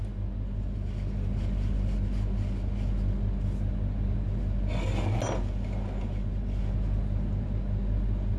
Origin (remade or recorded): recorded